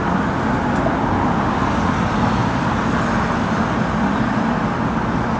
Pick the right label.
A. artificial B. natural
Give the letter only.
B